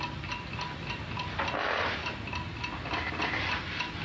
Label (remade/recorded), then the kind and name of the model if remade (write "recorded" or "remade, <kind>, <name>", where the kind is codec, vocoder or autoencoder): recorded